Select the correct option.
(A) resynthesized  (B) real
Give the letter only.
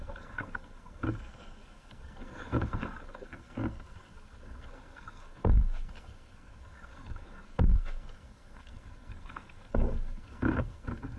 A